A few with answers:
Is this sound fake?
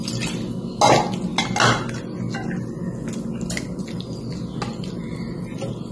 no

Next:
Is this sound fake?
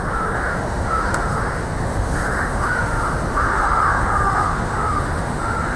yes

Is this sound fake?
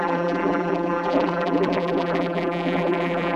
yes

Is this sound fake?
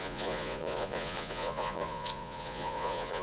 yes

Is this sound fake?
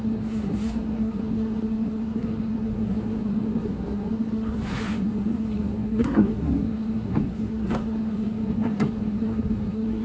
yes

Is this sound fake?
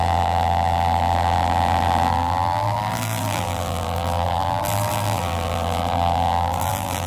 yes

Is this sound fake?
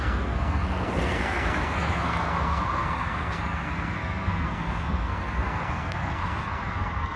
yes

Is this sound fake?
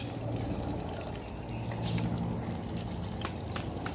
no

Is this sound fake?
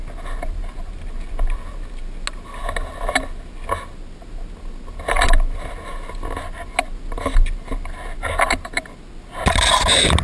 no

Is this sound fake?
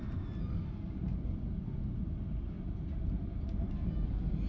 no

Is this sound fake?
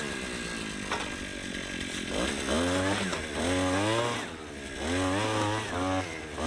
no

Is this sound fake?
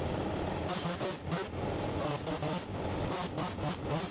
no